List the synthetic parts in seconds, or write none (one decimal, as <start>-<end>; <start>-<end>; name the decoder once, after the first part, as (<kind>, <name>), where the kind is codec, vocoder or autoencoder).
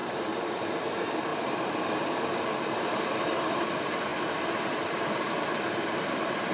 0.0-4.1 (vocoder, BigVGAN v2); 4.7-6.5